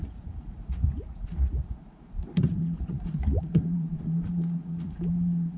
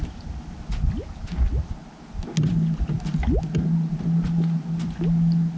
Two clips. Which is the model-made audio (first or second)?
first